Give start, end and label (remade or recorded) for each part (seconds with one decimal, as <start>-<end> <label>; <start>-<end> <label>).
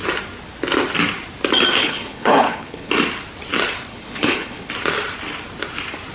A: 0.0-1.8 recorded; 1.8-2.9 remade; 2.9-3.9 recorded; 3.9-4.7 remade; 4.7-6.1 recorded